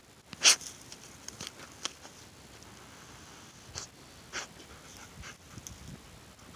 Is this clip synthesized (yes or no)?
no